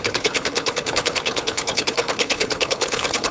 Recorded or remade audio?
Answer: remade